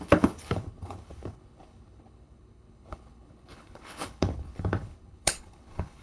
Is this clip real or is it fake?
fake